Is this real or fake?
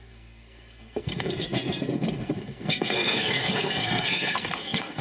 fake